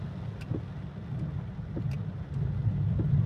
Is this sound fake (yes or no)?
no